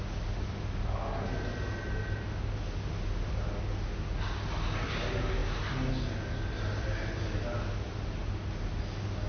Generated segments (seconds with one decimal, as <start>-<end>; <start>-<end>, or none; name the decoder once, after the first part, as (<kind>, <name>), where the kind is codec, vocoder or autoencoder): none

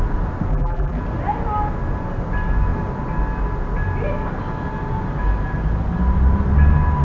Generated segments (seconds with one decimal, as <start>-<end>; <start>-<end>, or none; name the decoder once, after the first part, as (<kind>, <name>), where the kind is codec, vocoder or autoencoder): 0.5-1.0 (vocoder, BigVGAN v2)

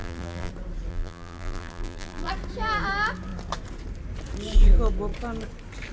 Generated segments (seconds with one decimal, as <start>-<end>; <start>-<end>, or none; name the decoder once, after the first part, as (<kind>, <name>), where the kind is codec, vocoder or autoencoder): 0.0-0.5 (vocoder, BigVGAN v2); 0.9-2.3

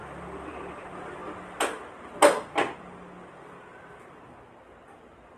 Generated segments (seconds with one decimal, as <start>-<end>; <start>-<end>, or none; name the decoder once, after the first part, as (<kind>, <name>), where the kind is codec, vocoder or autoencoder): none

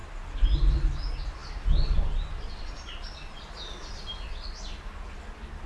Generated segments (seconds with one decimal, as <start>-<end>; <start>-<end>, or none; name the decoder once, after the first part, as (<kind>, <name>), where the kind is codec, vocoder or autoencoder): none

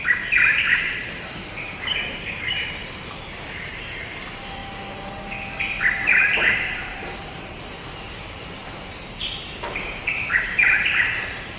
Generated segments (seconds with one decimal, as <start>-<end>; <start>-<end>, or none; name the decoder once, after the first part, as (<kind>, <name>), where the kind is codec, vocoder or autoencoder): 0.0-4.6 (vocoder, BigVGAN v2); 5.7-11.6

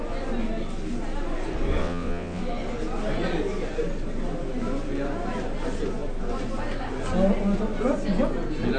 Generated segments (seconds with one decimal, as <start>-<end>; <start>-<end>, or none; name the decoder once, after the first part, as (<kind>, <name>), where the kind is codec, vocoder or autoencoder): 1.8-2.4 (vocoder, WaveNeXt)